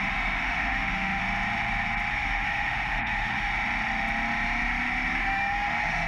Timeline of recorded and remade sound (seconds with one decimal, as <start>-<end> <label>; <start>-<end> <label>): 0.0-1.2 remade; 1.2-2.1 recorded; 2.1-3.5 remade; 3.5-5.2 recorded; 5.2-6.1 remade

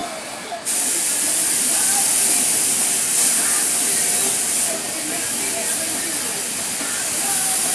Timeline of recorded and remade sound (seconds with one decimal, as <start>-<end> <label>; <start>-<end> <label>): 0.0-2.2 remade; 2.2-4.2 recorded; 4.2-5.5 remade; 5.5-7.7 recorded